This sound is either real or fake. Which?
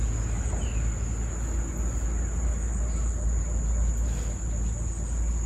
real